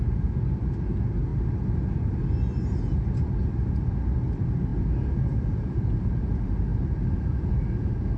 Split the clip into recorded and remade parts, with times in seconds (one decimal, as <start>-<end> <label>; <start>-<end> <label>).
0.0-8.2 recorded